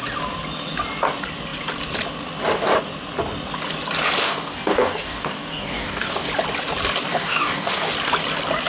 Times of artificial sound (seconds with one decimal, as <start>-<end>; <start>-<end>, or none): 4.2-6.3; 7.1-7.9